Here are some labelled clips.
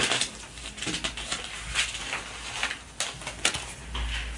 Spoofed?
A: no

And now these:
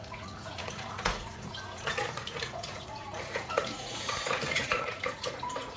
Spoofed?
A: yes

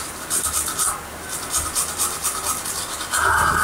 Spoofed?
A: no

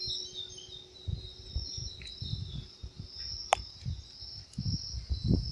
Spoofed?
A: no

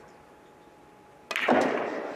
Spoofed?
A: no